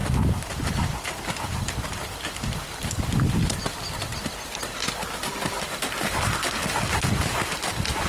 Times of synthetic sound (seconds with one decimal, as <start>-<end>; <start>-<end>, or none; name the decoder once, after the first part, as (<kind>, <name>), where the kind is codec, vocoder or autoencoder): none